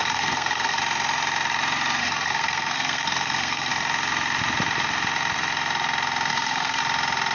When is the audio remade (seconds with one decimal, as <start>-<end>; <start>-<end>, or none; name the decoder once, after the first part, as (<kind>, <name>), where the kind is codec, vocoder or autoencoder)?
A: 0.0-0.8 (codec, SNAC); 2.0-3.7; 6.3-6.8